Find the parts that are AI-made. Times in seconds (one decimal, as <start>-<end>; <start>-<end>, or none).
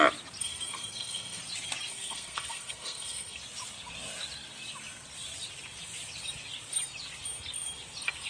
0.4-1.4; 1.9-3.4